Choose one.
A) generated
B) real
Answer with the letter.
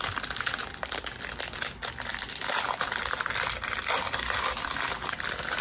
B